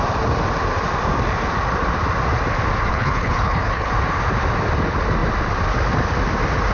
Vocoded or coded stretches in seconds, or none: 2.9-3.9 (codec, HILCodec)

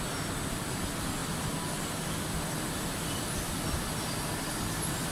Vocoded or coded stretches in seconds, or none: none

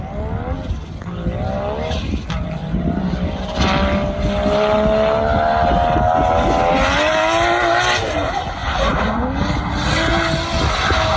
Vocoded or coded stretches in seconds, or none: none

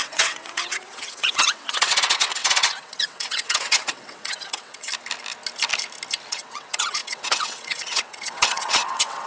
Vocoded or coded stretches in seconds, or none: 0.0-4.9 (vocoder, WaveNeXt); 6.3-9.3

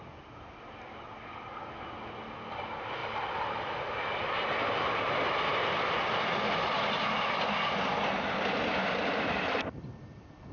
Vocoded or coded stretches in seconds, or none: none

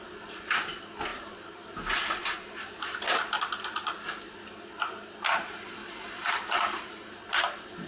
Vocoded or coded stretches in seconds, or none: 5.8-7.1 (vocoder, BigVGAN v2)

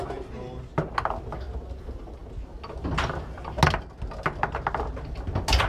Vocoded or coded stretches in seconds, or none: none